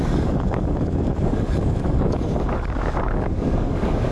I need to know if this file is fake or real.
fake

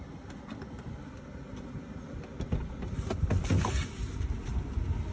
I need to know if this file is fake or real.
real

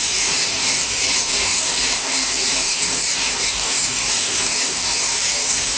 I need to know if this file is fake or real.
fake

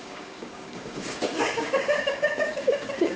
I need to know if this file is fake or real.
fake